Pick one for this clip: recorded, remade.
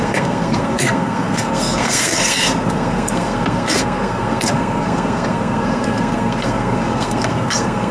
remade